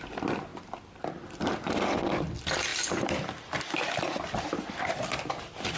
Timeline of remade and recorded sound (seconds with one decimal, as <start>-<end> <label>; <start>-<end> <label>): 0.0-5.8 recorded

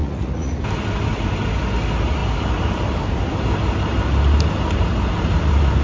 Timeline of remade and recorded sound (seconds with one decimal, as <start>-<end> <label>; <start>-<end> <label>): 0.0-0.6 remade; 0.6-5.8 recorded

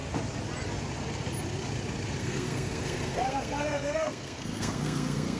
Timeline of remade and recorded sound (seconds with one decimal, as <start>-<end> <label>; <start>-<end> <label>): 0.0-2.2 recorded; 2.2-5.4 remade

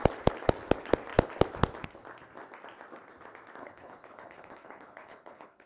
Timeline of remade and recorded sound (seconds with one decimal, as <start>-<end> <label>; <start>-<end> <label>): 0.0-3.6 recorded; 3.6-5.7 remade

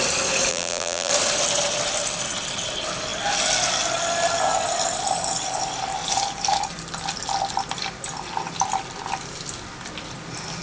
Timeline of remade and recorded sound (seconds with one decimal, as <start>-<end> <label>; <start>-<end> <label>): 0.0-0.5 recorded; 0.5-1.1 remade; 1.1-10.6 recorded